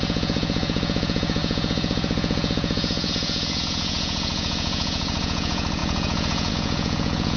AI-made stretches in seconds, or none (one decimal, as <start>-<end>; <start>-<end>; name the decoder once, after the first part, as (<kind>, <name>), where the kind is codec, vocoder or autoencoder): 0.0-7.4 (vocoder, Vocos)